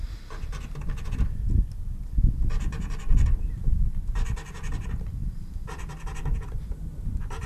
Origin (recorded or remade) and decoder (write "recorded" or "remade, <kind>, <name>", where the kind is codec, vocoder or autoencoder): recorded